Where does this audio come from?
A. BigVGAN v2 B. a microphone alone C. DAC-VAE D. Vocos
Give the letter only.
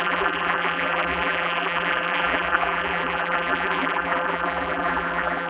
A